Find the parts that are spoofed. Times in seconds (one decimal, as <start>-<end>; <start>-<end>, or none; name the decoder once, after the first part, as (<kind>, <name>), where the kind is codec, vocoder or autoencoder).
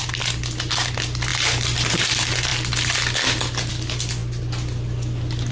none